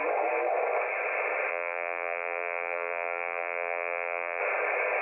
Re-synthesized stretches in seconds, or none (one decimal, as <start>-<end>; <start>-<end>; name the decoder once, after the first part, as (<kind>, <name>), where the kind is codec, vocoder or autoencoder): 1.5-4.4 (vocoder, BigVGAN v2)